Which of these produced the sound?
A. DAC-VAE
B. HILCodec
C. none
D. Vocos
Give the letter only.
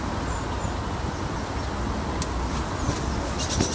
C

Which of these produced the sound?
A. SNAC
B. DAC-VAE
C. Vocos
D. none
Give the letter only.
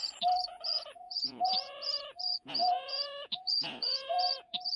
C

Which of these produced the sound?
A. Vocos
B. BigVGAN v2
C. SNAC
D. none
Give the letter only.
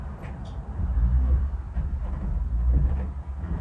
D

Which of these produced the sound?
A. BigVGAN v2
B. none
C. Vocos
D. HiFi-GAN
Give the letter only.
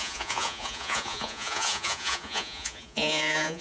C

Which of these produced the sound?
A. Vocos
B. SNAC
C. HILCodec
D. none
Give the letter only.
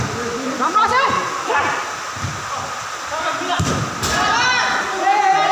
D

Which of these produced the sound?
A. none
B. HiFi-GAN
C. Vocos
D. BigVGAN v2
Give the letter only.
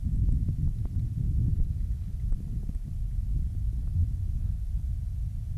A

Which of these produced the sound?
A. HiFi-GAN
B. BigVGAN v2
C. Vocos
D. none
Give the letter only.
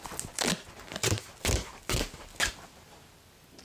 D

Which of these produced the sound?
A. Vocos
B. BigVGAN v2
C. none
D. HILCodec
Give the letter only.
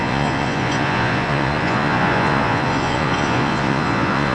A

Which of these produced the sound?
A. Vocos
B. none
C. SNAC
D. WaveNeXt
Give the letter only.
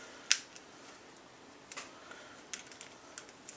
B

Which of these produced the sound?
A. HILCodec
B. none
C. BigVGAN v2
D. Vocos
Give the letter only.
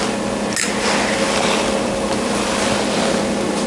B